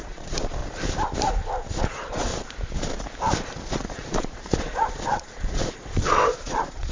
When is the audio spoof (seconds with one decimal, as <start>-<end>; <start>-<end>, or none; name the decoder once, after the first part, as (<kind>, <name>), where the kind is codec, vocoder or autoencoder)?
0.0-0.6 (vocoder, Vocos); 1.8-2.3; 3.7-6.9

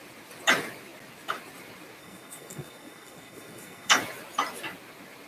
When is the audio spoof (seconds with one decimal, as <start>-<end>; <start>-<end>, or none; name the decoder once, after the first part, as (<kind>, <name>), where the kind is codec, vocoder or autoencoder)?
2.0-4.0 (codec, SNAC)

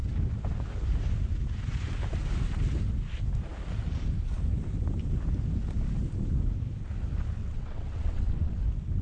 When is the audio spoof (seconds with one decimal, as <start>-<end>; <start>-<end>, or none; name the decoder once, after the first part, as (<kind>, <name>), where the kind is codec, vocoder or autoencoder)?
7.4-8.6 (vocoder, WaveNeXt)

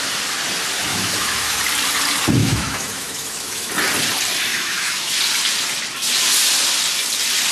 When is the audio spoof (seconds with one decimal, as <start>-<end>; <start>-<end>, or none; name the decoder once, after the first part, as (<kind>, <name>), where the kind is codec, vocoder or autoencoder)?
0.9-1.6 (autoencoder, DAC-VAE); 2.4-3.7; 4.5-5.2

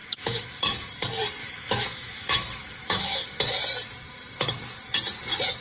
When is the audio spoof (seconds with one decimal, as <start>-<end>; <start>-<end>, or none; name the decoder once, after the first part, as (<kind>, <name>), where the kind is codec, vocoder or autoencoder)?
0.0-0.9 (autoencoder, DAC-VAE); 1.4-3.4